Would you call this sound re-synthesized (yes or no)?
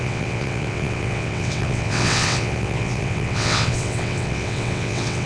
yes